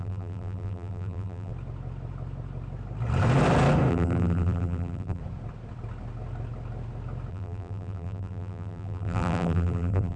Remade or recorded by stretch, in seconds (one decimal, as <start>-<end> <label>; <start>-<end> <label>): 0.0-1.5 remade; 1.5-3.9 recorded; 3.9-5.2 remade; 5.2-7.3 recorded; 7.3-10.2 remade